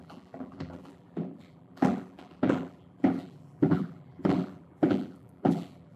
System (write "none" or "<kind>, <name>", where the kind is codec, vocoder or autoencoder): vocoder, BigVGAN v2